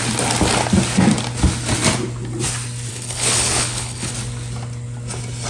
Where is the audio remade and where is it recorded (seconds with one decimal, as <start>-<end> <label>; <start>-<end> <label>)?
0.0-2.9 recorded; 2.9-4.1 remade; 4.1-5.5 recorded